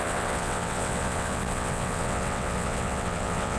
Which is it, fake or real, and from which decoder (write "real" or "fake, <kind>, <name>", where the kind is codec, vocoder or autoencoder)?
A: fake, vocoder, WaveNeXt